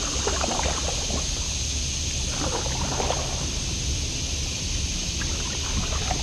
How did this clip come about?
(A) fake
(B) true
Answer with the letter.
B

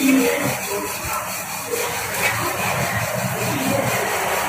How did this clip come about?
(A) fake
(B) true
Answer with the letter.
A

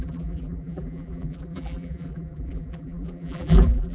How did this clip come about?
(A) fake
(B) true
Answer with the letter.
A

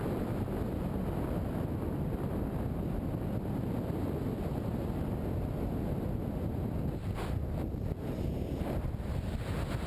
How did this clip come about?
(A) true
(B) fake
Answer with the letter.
A